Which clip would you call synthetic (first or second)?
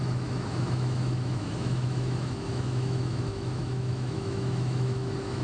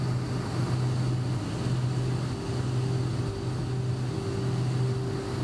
first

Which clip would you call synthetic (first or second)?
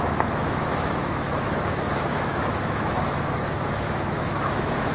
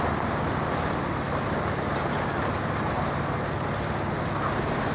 first